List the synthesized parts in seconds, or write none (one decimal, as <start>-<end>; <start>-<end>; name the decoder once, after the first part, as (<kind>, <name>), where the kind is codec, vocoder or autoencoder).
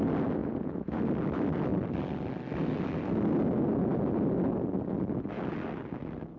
0.4-1.0 (vocoder, Vocos)